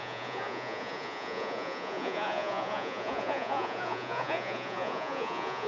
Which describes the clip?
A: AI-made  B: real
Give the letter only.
A